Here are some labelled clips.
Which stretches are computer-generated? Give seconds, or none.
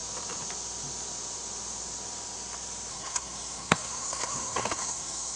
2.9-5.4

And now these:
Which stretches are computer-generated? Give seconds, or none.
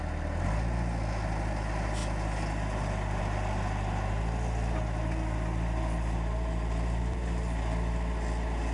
none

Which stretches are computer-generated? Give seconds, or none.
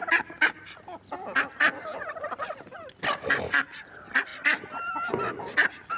none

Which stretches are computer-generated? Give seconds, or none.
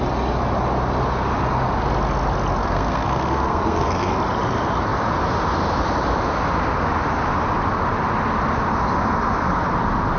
2.6-4.1